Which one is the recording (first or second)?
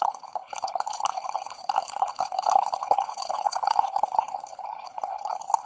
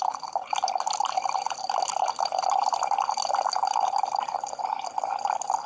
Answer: second